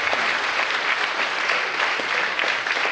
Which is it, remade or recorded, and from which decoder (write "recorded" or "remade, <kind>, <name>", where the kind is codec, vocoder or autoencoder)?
recorded